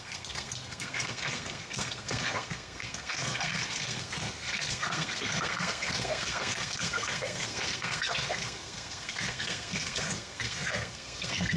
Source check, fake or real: fake